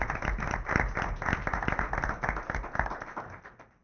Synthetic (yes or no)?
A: no